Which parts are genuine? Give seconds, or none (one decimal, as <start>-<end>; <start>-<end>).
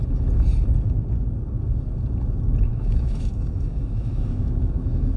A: 0.0-2.7